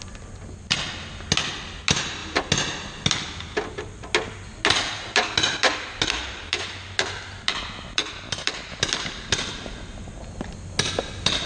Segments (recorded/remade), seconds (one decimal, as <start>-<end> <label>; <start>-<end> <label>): 0.0-11.5 recorded